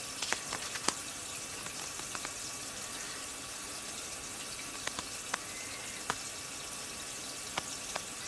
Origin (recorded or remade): recorded